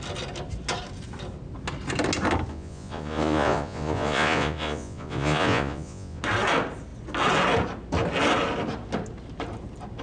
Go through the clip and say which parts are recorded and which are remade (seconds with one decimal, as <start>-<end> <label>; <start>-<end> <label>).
0.0-2.5 recorded; 2.5-6.2 remade; 6.2-10.0 recorded